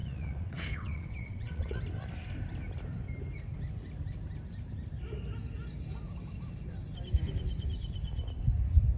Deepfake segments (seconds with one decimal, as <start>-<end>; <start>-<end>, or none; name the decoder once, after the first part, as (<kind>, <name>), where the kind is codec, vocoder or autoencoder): 0.0-1.8 (vocoder, WaveNeXt)